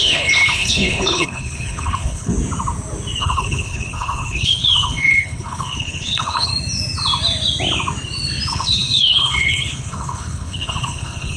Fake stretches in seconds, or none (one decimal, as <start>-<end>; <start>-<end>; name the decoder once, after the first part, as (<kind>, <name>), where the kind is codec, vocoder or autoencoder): 0.0-2.3 (codec, HILCodec); 3.2-6.5; 8.5-11.4

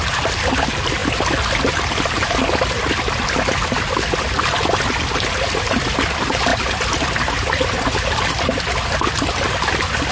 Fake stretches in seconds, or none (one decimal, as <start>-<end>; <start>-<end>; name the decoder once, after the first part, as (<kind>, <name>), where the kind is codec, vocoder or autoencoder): none

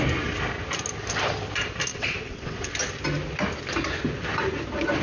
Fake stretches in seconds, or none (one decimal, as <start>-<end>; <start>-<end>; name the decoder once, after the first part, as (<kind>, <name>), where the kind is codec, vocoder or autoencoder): 1.9-2.7 (vocoder, WaveNeXt)

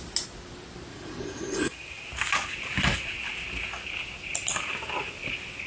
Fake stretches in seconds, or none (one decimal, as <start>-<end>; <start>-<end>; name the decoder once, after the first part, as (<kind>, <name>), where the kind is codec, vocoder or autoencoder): 0.9-2.0 (vocoder, Vocos)

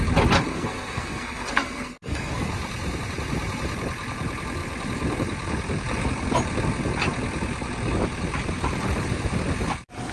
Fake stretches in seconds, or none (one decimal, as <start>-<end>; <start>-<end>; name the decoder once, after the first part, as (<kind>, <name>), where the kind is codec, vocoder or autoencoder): 0.5-2.5 (codec, SNAC)

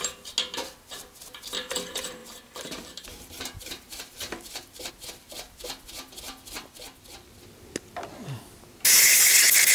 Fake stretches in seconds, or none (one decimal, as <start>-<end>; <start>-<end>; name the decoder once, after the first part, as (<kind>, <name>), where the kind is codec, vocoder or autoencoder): 2.2-4.9 (vocoder, BigVGAN v2)

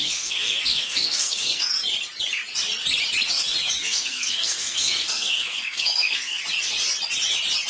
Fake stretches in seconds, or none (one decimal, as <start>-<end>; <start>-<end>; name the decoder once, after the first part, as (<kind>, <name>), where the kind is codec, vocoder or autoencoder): 0.0-1.7 (codec, SNAC); 3.8-6.4

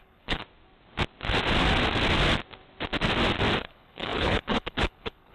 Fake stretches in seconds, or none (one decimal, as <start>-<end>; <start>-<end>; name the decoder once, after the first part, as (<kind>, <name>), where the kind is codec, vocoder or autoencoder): 0.0-0.4 (codec, HILCodec); 3.6-5.3